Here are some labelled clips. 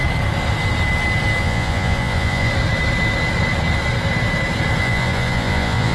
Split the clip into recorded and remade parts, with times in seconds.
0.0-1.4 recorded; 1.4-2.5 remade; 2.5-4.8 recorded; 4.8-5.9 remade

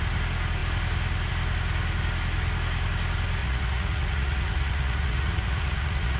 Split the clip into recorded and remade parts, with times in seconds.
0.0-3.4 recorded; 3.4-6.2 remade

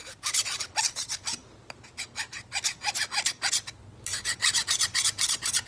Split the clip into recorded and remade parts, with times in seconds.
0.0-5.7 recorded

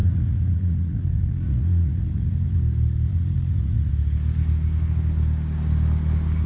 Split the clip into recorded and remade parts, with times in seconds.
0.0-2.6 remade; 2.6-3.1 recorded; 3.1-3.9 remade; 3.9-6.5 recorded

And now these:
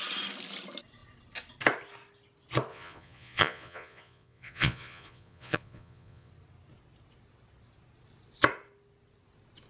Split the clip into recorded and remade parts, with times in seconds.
0.0-2.7 recorded; 2.7-6.3 remade; 6.3-9.7 recorded